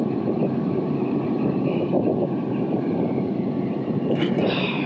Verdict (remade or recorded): remade